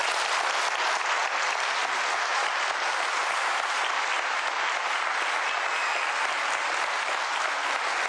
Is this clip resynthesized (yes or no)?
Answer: no